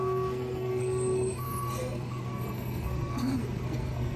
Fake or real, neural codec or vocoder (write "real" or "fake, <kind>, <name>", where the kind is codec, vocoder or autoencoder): fake, codec, SNAC